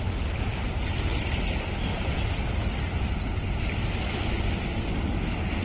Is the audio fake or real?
real